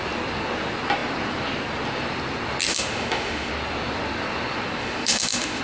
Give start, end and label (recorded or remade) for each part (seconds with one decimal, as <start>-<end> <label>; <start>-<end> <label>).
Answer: 0.0-2.7 recorded; 2.7-3.5 remade; 3.5-4.8 recorded; 4.8-5.6 remade